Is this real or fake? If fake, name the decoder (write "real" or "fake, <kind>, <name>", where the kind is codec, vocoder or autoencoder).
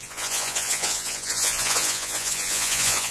fake, vocoder, Vocos